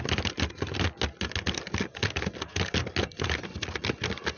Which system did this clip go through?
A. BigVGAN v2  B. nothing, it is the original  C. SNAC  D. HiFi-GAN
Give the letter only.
B